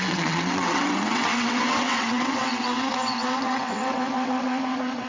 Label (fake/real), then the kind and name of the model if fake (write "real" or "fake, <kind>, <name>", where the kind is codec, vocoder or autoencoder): fake, vocoder, WaveNeXt